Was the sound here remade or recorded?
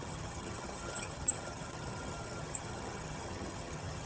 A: remade